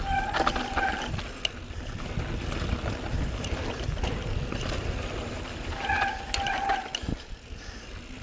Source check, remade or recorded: recorded